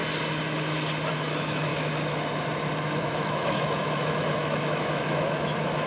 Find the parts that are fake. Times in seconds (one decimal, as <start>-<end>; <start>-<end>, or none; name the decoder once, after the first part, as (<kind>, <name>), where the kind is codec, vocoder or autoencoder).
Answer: 1.1-1.7 (autoencoder, DAC-VAE); 3.0-5.9